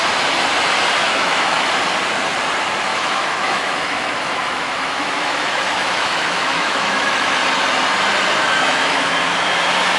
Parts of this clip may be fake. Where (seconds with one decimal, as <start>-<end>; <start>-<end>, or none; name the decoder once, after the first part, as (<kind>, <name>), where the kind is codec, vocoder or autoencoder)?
1.0-1.7 (autoencoder, DAC-VAE); 2.9-7.4; 8.4-9.1